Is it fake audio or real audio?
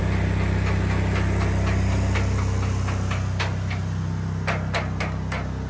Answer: real